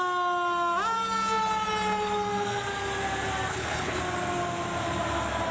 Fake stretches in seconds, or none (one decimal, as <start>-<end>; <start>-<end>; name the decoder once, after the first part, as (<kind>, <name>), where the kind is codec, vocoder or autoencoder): 3.5-4.0 (codec, HILCodec)